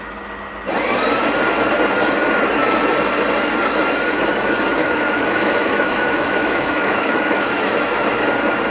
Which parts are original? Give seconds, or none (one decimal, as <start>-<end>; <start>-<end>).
0.0-4.8; 7.8-8.7